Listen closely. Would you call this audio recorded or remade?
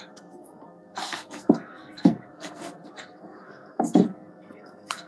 remade